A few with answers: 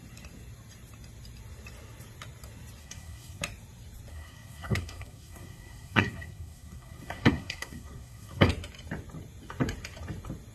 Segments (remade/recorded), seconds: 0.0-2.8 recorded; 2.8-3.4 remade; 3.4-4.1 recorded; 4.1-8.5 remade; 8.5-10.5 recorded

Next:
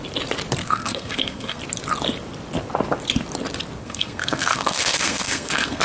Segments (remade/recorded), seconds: 0.0-0.6 recorded; 0.6-1.6 remade; 1.6-3.8 recorded; 3.8-5.8 remade

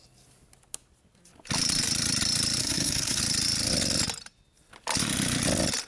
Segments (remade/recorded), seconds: 0.0-2.6 recorded; 2.6-3.2 remade; 3.2-5.9 recorded

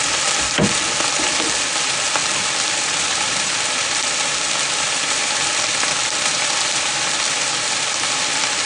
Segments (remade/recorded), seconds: 0.0-2.2 recorded; 2.2-7.1 remade; 7.1-8.7 recorded

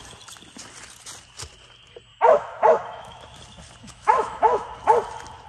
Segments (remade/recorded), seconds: 0.0-2.1 recorded; 2.1-3.4 remade; 3.4-3.8 recorded; 3.8-4.7 remade; 4.7-5.5 recorded

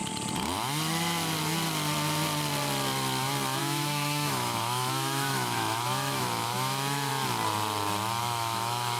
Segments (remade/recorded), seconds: 0.0-3.6 recorded; 3.6-7.1 remade; 7.1-8.2 recorded; 8.2-9.0 remade

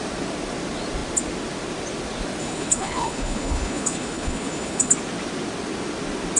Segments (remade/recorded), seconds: 0.0-2.4 recorded; 2.4-4.9 remade; 4.9-6.4 recorded